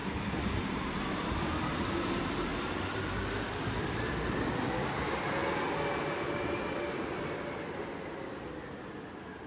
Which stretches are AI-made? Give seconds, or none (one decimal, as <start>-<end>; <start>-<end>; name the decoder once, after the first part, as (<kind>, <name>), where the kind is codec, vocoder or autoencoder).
2.5-3.2 (vocoder, BigVGAN v2)